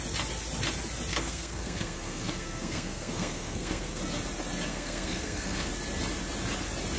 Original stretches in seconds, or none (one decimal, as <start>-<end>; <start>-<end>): 0.0-1.1; 4.0-4.7; 5.7-7.0